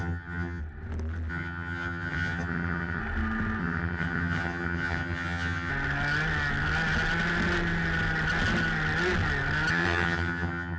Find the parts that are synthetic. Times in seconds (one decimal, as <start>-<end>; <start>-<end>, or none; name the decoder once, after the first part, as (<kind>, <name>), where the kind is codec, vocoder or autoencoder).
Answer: 0.0-0.6 (vocoder, HiFi-GAN); 1.3-3.0; 3.6-5.7; 9.7-10.8